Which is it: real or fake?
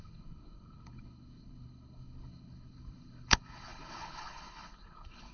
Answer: fake